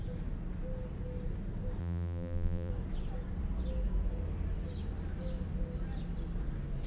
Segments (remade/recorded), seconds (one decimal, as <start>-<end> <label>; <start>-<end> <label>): 0.0-1.8 recorded; 1.8-2.7 remade; 2.7-6.9 recorded